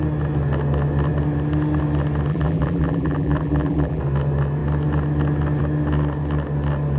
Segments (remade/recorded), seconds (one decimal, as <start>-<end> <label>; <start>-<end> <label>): 0.0-2.3 recorded; 2.3-4.0 remade; 4.0-7.0 recorded